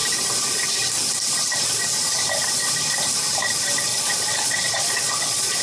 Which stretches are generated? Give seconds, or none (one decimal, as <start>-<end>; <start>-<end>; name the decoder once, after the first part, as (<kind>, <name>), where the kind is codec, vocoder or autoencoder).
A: 3.9-5.6 (vocoder, Vocos)